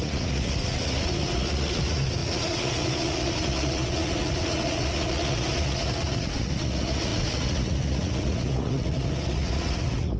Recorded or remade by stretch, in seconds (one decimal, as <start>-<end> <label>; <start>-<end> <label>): 0.0-10.2 remade